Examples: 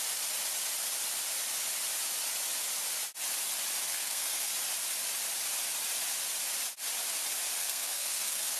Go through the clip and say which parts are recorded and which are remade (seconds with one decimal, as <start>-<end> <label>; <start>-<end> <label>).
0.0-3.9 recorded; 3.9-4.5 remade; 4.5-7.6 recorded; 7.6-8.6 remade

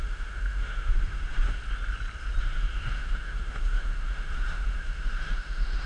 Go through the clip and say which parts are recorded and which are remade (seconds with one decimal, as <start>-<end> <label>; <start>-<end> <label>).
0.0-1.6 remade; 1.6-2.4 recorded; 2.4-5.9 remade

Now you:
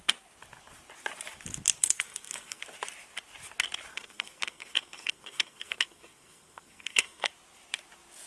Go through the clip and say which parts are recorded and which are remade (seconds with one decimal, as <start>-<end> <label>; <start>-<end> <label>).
0.0-1.8 recorded; 1.8-2.6 remade; 2.6-3.9 recorded; 3.9-7.3 remade; 7.3-8.3 recorded

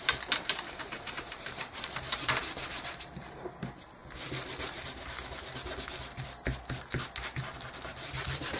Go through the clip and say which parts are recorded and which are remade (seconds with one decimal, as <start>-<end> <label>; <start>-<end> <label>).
0.0-4.0 remade; 4.0-8.1 recorded; 8.1-8.6 remade